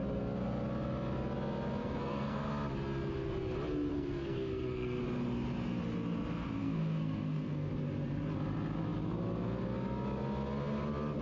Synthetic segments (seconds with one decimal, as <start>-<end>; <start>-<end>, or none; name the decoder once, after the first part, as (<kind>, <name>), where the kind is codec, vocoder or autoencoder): 1.8-2.5 (codec, SNAC); 3.9-5.0; 6.6-7.7